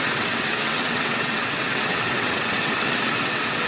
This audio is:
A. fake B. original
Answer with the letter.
A